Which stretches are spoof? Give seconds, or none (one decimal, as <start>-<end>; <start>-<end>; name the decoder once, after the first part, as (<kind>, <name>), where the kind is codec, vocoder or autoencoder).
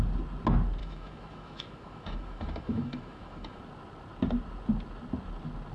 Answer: 0.8-3.6 (autoencoder, DAC-VAE)